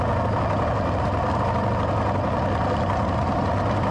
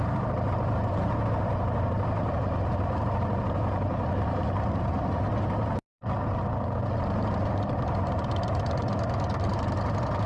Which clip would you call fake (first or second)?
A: second